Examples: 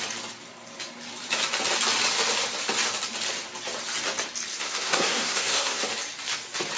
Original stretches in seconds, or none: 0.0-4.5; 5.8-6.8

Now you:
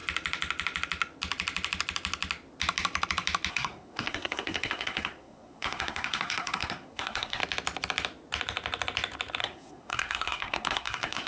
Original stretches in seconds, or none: 0.0-3.5; 7.4-9.4

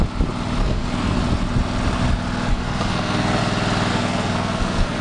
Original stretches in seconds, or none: 0.0-0.6; 1.2-2.5; 3.4-3.9